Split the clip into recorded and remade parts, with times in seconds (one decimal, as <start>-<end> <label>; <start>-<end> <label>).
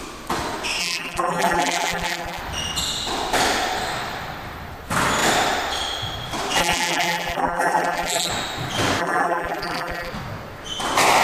0.0-0.8 recorded; 0.8-2.4 remade; 2.4-6.6 recorded; 6.6-8.3 remade; 8.3-9.0 recorded; 9.0-10.1 remade; 10.1-11.2 recorded